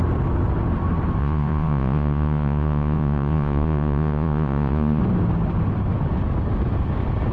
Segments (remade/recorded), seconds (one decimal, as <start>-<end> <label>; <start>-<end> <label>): 0.0-1.2 recorded; 1.2-5.0 remade; 5.0-7.3 recorded